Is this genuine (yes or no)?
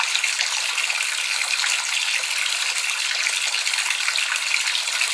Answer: yes